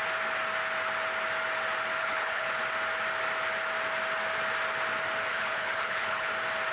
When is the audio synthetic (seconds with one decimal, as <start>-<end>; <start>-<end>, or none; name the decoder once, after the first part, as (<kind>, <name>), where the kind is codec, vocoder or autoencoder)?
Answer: 2.0-2.6 (codec, HILCodec); 5.3-6.3